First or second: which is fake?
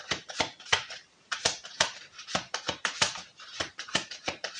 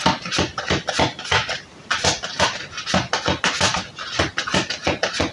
first